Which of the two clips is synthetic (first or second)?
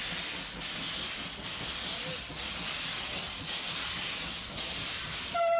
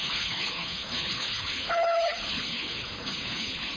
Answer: second